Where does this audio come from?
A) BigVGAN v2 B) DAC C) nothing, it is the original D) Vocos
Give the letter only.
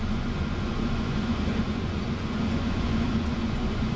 D